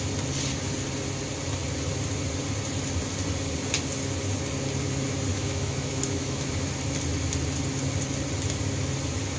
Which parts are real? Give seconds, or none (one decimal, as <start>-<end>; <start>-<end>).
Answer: 0.0-5.3; 6.5-9.4